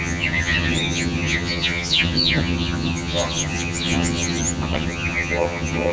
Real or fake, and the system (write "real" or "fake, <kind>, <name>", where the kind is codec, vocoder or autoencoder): fake, vocoder, HiFi-GAN